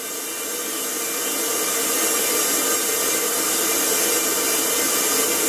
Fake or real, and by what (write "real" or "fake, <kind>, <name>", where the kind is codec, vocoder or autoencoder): real